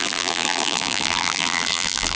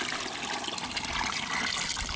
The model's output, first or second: first